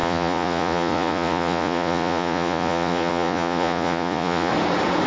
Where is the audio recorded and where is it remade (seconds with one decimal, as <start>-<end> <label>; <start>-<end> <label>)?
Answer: 0.0-4.5 remade; 4.5-5.1 recorded